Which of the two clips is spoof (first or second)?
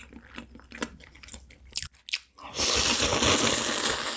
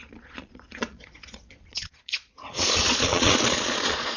second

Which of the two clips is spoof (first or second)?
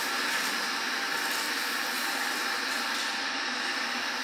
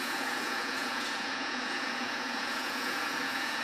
second